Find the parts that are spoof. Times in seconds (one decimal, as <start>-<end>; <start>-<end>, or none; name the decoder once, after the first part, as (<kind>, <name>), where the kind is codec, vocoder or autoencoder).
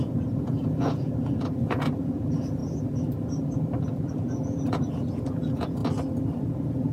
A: 0.0-2.6 (vocoder, Vocos); 3.8-5.8; 6.5-6.9